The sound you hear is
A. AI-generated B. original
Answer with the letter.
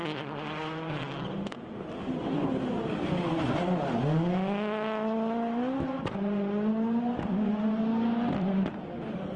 B